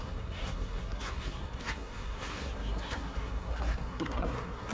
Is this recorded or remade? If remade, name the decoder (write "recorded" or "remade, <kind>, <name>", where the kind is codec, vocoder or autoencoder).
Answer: remade, codec, SNAC